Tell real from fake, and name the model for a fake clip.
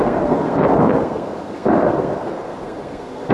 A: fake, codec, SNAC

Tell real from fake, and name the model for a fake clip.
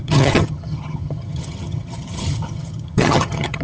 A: fake, vocoder, HiFi-GAN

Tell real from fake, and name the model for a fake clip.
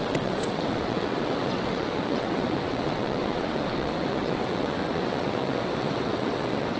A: fake, vocoder, WaveNeXt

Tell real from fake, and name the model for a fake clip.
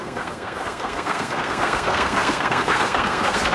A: fake, codec, SNAC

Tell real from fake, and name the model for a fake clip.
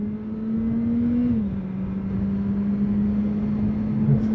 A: real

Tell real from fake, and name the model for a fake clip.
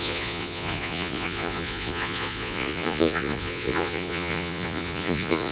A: fake, vocoder, Vocos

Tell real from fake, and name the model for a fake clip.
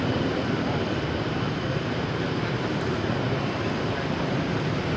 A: real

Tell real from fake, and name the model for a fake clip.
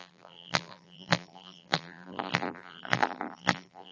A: fake, vocoder, BigVGAN v2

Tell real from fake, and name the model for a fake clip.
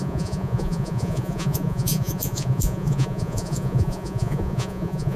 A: fake, vocoder, Vocos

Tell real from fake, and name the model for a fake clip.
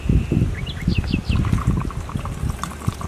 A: real